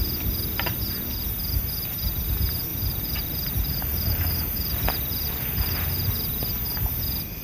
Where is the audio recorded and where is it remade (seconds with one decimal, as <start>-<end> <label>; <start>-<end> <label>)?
0.0-2.7 recorded; 2.7-6.1 remade; 6.1-7.4 recorded